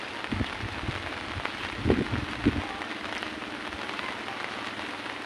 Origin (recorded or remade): recorded